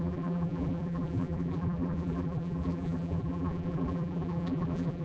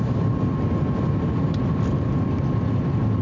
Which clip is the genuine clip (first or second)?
second